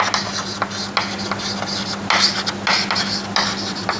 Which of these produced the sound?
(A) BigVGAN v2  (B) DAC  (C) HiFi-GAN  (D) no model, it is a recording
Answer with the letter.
D